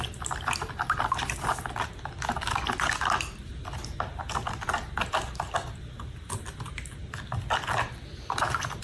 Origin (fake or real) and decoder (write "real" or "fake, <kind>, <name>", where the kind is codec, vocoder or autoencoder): real